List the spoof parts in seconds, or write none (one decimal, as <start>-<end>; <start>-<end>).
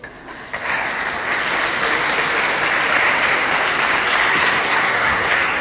0.0-0.9; 4.3-5.6